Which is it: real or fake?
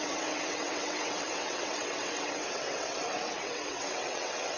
fake